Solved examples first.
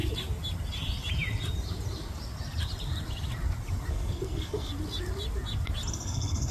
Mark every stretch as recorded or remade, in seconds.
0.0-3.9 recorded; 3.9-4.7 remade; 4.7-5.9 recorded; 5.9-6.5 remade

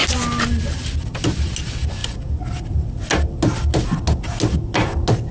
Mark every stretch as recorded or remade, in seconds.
0.0-5.3 recorded

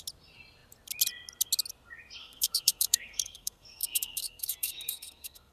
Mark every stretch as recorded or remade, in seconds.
0.0-2.2 recorded; 2.2-5.5 remade

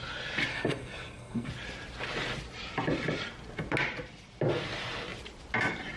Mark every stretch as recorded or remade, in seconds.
0.0-0.5 recorded; 0.5-1.5 remade; 1.5-6.0 recorded

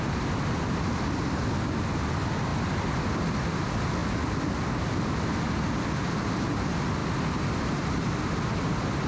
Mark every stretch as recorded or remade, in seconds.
0.0-9.1 recorded